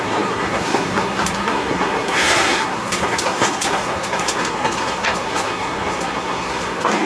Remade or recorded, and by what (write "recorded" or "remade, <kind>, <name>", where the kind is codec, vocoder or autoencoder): remade, codec, SNAC